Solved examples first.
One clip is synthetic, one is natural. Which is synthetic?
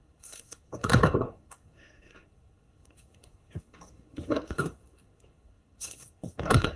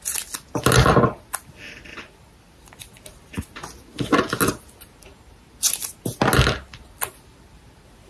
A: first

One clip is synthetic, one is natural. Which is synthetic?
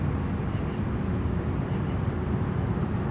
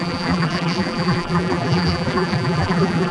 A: second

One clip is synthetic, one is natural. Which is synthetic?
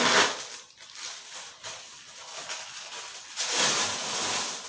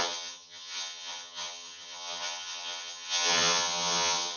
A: second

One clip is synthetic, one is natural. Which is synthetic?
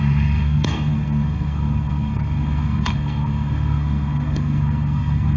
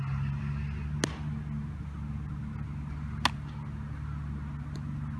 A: first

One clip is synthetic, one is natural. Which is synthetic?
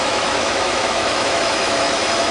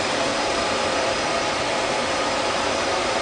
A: first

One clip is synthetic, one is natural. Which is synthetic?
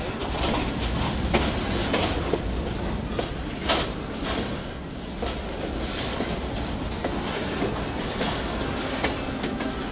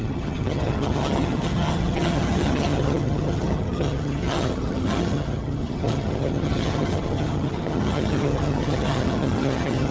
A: second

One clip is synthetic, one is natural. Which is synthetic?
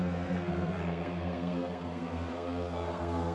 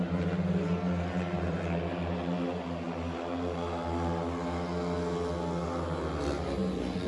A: first